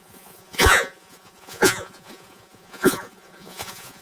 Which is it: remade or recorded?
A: remade